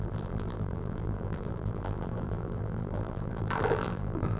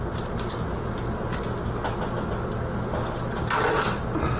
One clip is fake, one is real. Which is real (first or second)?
second